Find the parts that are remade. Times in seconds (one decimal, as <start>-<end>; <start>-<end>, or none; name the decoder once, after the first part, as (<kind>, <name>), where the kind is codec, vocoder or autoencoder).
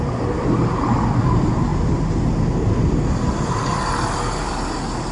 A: none